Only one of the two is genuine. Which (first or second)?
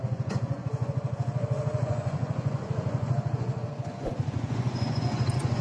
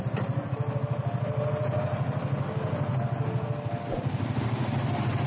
second